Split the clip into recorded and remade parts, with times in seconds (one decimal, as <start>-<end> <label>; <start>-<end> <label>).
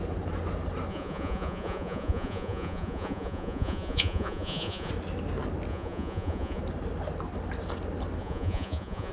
0.0-0.9 recorded; 0.9-4.9 remade; 4.9-5.7 recorded; 5.7-6.6 remade; 6.6-8.2 recorded; 8.2-9.1 remade